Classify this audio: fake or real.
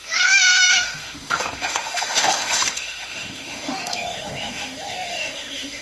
fake